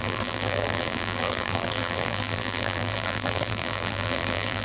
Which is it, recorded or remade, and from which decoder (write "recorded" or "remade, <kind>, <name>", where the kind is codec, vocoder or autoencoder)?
remade, vocoder, BigVGAN v2